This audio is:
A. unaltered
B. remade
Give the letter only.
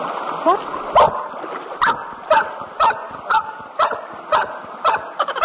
A